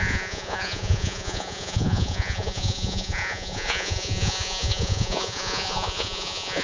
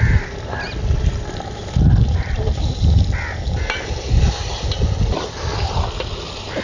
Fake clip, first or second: first